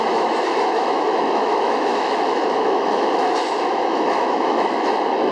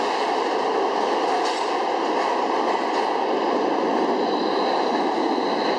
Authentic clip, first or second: second